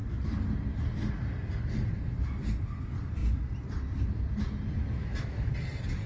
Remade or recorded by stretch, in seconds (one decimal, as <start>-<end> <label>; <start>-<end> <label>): 0.0-5.0 recorded; 5.0-5.5 remade; 5.5-6.1 recorded